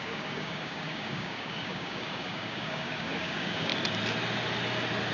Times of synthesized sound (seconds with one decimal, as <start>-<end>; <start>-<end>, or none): 0.0-3.7